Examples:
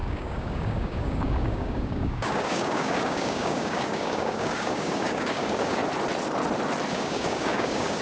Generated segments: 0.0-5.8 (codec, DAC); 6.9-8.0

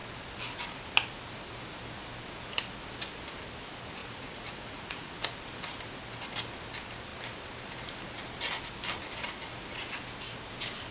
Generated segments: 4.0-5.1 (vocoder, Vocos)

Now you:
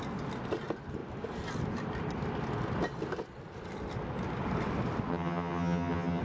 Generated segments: 5.1-6.2 (vocoder, HiFi-GAN)

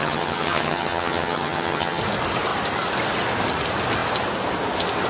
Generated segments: 0.0-2.0 (vocoder, HiFi-GAN)